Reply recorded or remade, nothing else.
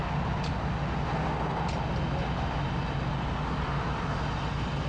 recorded